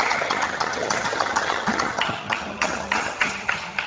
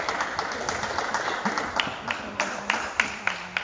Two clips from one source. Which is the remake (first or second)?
first